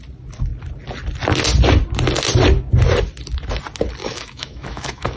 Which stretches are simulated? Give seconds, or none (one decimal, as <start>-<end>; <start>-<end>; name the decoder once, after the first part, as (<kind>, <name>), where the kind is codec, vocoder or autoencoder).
4.0-5.2 (autoencoder, DAC-VAE)